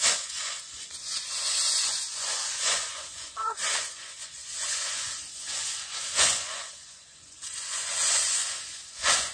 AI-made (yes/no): yes